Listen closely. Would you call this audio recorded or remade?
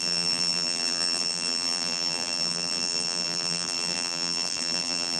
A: remade